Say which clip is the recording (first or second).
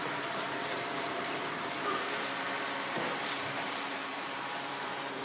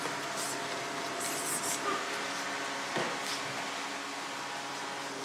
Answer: second